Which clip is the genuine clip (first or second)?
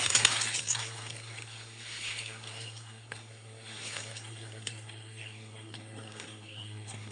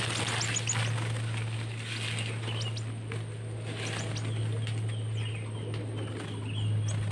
second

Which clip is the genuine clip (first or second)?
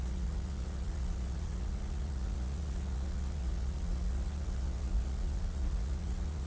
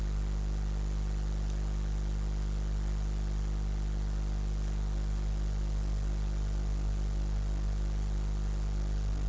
second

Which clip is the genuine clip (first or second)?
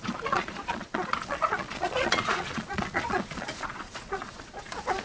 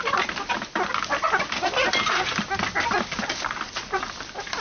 second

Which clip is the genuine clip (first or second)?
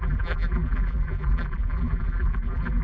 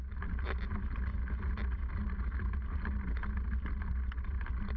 second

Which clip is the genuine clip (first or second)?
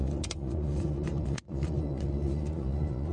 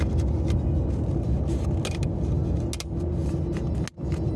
second